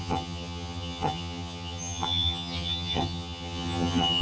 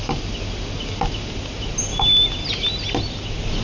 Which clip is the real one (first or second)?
second